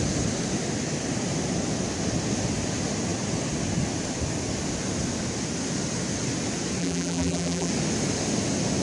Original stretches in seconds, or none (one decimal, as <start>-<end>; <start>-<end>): 0.0-6.8; 7.7-8.8